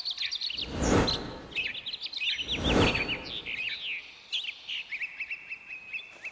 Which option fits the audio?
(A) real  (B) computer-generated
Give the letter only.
A